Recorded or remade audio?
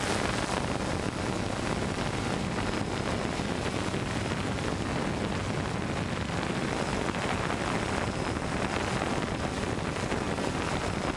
recorded